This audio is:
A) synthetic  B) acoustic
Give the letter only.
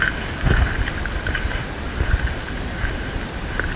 B